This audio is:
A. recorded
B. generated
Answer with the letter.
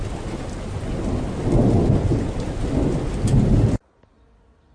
A